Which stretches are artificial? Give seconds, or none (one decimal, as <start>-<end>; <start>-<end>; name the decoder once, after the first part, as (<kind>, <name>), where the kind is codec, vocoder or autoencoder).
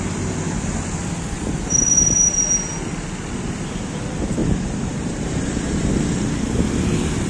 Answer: 4.4-5.9 (vocoder, BigVGAN v2)